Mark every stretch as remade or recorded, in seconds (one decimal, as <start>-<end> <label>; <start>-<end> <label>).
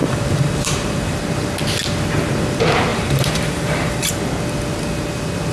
0.0-1.2 remade; 1.2-2.9 recorded; 2.9-4.2 remade; 4.2-5.5 recorded